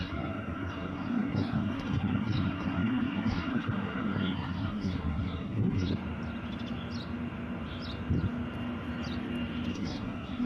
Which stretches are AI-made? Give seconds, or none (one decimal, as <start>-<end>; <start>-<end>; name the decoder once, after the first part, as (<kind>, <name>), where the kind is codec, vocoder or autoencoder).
0.0-5.9 (codec, SNAC); 9.7-10.5

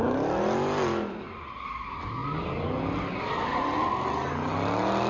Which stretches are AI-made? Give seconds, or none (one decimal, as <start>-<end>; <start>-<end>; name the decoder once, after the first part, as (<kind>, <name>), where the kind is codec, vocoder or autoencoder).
none

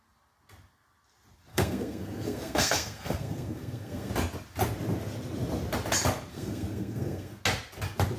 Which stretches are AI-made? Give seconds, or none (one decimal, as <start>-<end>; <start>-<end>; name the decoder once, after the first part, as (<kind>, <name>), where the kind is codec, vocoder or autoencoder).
1.5-4.1 (codec, SNAC); 6.3-7.4